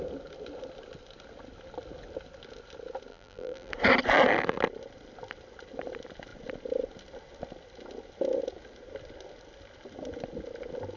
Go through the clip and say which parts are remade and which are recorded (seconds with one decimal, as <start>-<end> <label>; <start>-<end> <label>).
0.0-3.1 recorded; 3.1-3.7 remade; 3.7-11.0 recorded